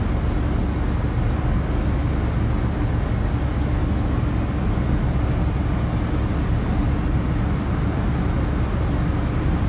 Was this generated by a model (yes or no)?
no